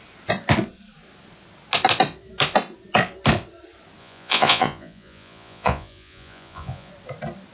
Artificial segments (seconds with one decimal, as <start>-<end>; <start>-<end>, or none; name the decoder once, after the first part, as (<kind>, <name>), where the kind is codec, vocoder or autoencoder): 4.0-6.9 (vocoder, Vocos)